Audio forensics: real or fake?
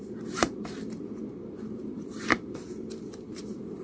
fake